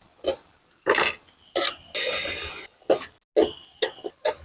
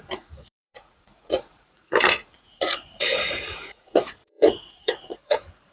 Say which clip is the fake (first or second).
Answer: second